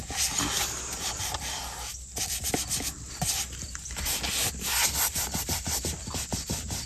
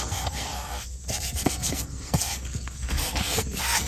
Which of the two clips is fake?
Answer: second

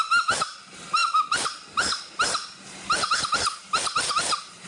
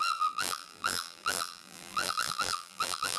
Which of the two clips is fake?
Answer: second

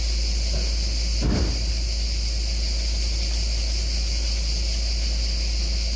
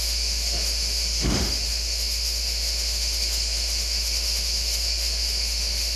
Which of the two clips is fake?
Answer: second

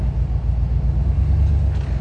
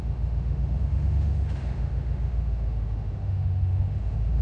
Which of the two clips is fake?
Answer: second